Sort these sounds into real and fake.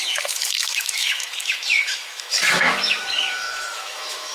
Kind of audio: fake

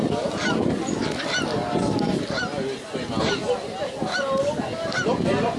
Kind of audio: real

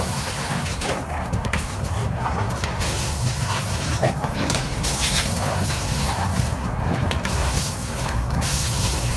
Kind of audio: fake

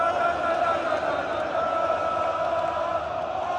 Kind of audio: real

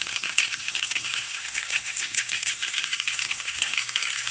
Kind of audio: fake